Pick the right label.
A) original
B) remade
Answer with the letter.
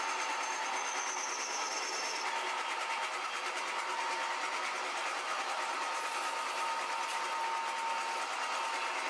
A